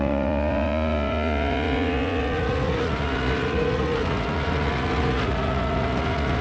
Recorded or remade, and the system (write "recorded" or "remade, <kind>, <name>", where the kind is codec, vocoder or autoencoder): remade, vocoder, Vocos